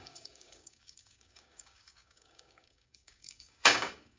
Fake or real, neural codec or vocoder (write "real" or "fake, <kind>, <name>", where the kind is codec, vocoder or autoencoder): fake, codec, DAC